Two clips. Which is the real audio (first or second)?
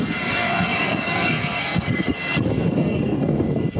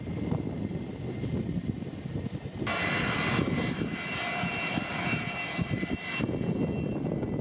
second